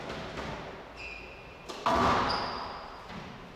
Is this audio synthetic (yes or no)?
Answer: no